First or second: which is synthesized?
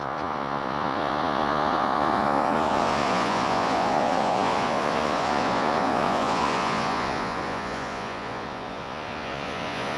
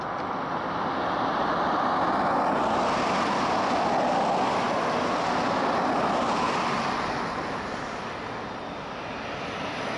first